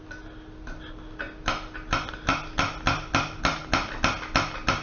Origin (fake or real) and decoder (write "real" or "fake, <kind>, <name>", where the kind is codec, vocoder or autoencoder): real